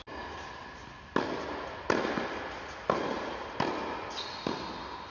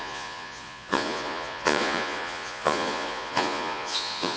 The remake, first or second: second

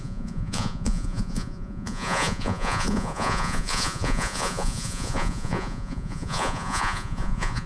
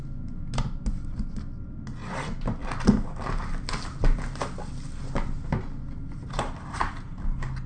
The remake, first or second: first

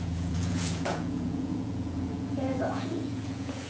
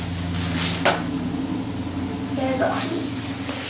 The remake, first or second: first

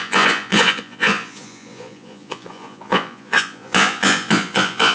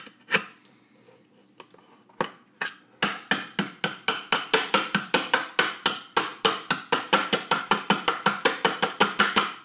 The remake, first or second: first